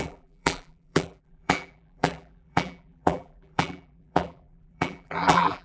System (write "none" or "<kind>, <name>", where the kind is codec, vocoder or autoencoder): vocoder, BigVGAN v2